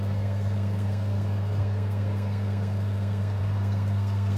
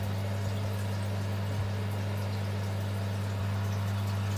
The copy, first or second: first